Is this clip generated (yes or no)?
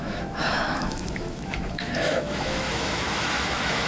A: yes